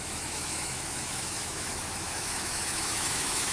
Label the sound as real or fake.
fake